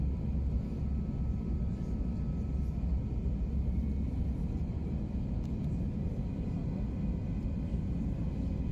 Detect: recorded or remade recorded